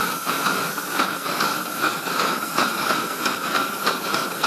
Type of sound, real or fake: fake